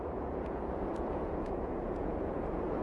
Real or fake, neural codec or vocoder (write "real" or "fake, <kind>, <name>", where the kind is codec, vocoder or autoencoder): fake, vocoder, Vocos